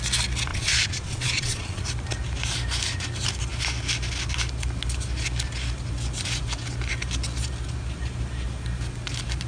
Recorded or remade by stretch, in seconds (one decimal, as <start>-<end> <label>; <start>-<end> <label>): 0.0-0.5 recorded; 0.5-1.8 remade; 1.8-9.5 recorded